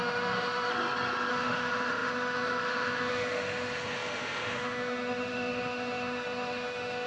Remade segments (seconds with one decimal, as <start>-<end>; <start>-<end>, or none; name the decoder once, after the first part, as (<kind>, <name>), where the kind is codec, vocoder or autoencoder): 0.0-0.7 (autoencoder, DAC-VAE); 1.3-7.1